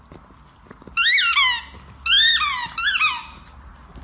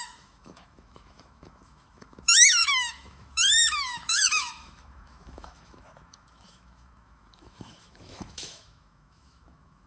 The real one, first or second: first